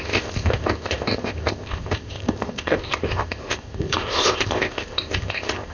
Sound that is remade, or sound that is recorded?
remade